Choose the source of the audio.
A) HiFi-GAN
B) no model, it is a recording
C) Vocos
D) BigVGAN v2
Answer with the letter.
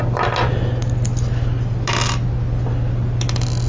B